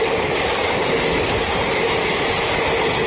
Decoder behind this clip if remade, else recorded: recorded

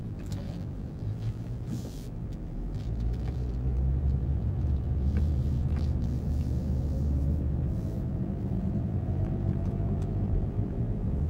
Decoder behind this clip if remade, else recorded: remade, vocoder, BigVGAN v2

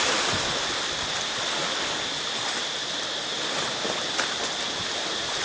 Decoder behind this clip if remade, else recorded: recorded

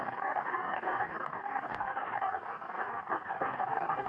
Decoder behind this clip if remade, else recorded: remade, codec, DAC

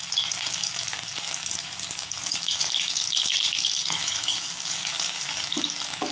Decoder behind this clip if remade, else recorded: remade, codec, DAC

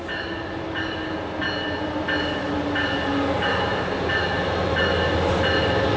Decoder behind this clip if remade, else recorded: recorded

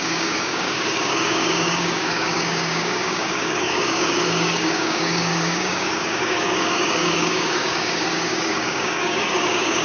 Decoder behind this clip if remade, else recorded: remade, codec, DAC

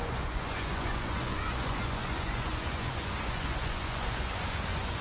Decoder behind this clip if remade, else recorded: remade, vocoder, Vocos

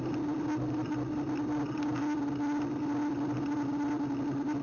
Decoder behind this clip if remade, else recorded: recorded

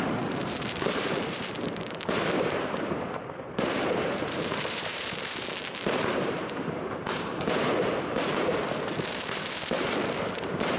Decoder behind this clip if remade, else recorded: remade, vocoder, BigVGAN v2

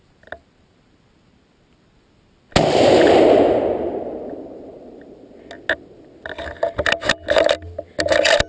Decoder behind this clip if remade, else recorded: recorded